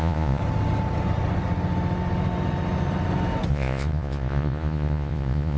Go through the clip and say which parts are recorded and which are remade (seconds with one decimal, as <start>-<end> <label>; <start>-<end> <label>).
0.0-0.4 remade; 0.4-3.5 recorded; 3.5-5.6 remade

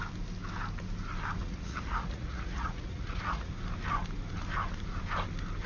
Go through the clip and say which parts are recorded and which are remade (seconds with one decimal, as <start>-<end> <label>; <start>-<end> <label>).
0.0-1.4 recorded; 1.4-3.5 remade; 3.5-5.7 recorded

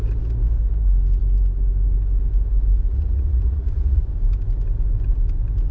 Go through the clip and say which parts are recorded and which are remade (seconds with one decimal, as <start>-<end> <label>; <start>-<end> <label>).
0.0-2.9 recorded; 2.9-4.0 remade; 4.0-5.7 recorded

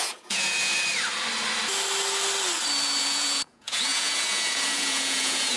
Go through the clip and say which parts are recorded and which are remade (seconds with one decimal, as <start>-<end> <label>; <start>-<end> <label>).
0.0-0.7 remade; 0.7-3.0 recorded; 3.0-5.6 remade

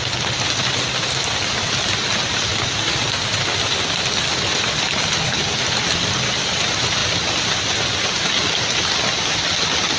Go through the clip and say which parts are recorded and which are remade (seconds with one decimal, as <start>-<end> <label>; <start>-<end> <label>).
0.0-10.0 recorded

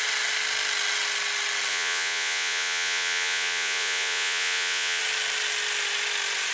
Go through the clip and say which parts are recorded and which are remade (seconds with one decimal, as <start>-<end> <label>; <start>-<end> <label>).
0.0-1.7 recorded; 1.7-5.0 remade; 5.0-6.5 recorded

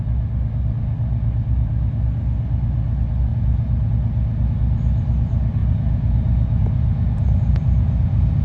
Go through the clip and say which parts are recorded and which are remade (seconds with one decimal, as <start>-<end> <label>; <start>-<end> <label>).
0.0-3.3 recorded; 3.3-3.9 remade; 3.9-5.6 recorded; 5.6-8.4 remade